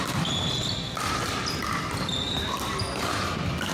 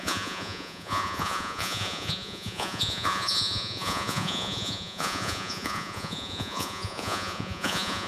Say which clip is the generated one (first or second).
second